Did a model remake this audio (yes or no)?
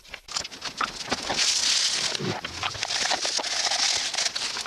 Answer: no